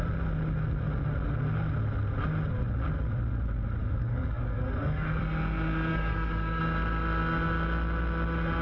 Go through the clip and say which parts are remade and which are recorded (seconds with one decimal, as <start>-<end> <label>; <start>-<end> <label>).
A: 0.0-3.8 recorded; 3.8-5.2 remade; 5.2-5.9 recorded; 5.9-6.6 remade; 6.6-8.6 recorded